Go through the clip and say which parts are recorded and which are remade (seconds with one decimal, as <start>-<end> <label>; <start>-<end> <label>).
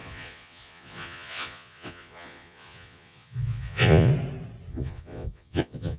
0.0-4.1 remade; 4.1-4.7 recorded; 4.7-6.0 remade